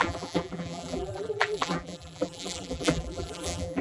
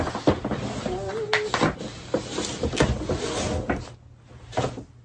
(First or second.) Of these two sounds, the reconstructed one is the first